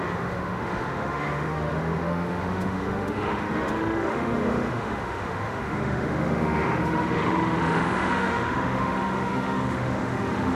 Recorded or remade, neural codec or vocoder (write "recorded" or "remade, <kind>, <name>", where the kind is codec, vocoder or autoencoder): remade, autoencoder, DAC-VAE